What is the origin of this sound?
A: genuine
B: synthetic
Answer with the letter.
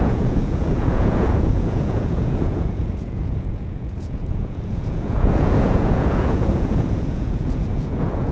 B